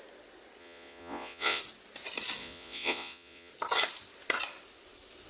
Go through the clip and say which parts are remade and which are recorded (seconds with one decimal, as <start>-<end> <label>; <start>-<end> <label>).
0.0-0.6 recorded; 0.6-1.6 remade; 1.6-2.4 recorded; 2.4-3.5 remade; 3.5-5.3 recorded